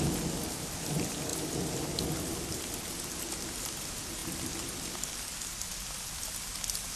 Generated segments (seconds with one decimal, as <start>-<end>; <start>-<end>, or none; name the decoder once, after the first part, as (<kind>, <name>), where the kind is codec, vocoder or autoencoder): none